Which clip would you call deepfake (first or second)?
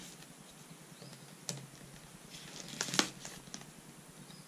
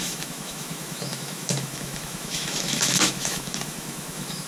second